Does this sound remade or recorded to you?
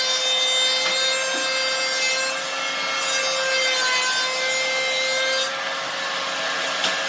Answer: recorded